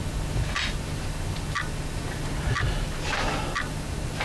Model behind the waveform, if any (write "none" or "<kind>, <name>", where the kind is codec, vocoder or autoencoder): none